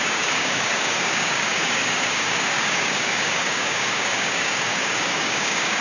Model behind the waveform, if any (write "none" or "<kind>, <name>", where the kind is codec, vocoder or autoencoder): codec, DAC